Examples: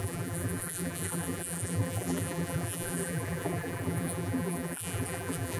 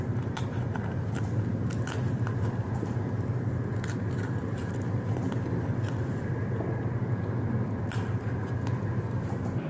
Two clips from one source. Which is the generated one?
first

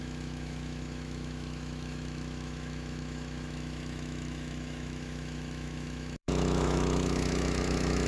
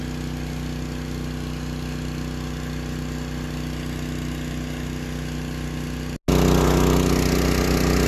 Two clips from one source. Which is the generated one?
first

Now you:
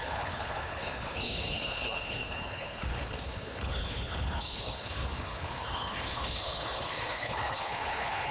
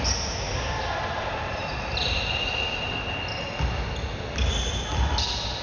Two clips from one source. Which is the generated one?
first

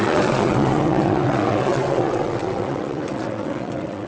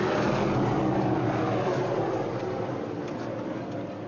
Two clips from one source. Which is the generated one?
first